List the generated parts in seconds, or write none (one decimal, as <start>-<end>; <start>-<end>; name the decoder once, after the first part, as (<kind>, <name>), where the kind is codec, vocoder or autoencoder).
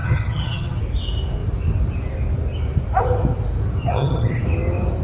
0.0-0.8 (vocoder, HiFi-GAN); 3.8-4.4